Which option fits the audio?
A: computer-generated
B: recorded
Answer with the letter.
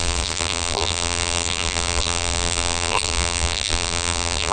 A